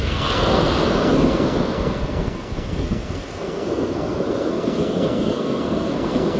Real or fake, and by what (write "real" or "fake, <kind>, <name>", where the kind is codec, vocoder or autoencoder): fake, codec, SNAC